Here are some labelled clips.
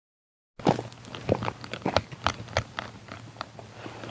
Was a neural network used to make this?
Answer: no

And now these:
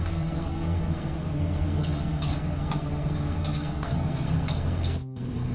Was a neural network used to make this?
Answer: yes